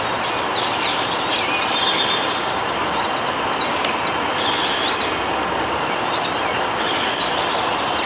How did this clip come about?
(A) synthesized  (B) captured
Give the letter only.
B